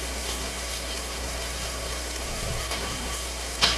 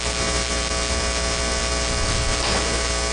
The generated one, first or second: first